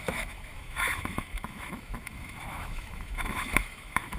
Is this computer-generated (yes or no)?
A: yes